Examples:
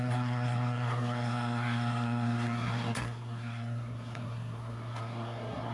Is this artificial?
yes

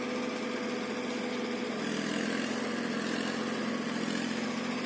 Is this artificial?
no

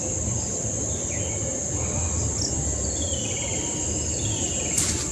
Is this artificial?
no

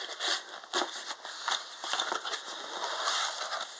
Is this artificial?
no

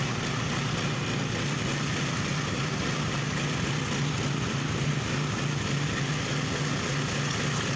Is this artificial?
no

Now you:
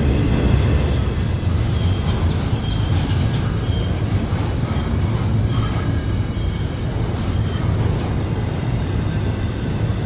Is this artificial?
no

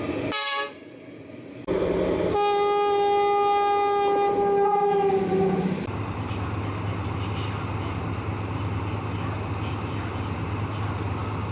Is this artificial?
no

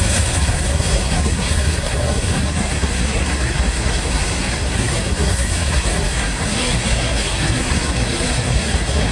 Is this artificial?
yes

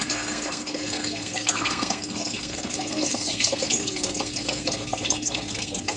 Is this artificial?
yes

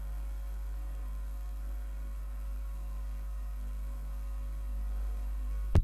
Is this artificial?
yes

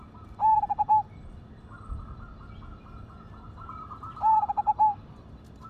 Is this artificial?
no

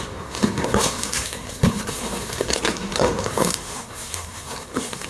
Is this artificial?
yes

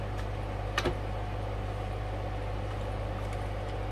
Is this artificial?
no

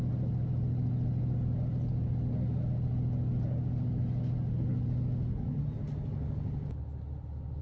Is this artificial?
no